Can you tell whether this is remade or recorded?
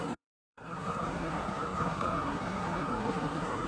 remade